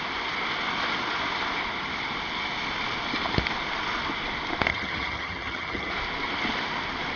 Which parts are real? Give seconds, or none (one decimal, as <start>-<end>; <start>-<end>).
0.0-4.7; 5.9-7.2